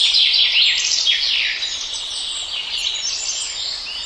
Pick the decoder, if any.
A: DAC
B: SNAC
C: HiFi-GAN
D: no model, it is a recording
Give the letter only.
D